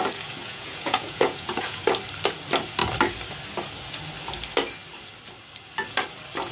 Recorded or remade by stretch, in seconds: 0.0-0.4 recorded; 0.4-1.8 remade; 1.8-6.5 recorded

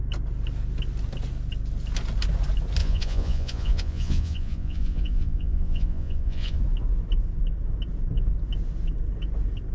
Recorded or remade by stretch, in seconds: 0.0-2.8 recorded; 2.8-6.6 remade; 6.6-9.7 recorded

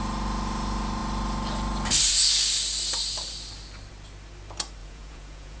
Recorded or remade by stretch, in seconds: 0.0-4.8 recorded; 4.8-5.6 remade

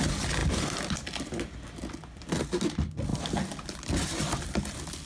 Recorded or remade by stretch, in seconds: 0.0-5.1 recorded

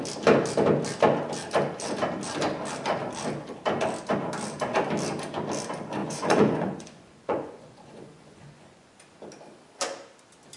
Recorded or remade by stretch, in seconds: 0.0-6.0 recorded; 6.0-9.0 remade; 9.0-10.6 recorded

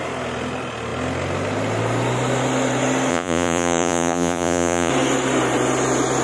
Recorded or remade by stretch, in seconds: 0.0-3.1 recorded; 3.1-4.9 remade; 4.9-6.2 recorded

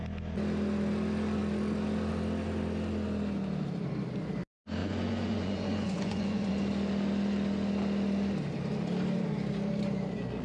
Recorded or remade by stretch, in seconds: 0.0-4.8 recorded; 4.8-6.5 remade; 6.5-10.4 recorded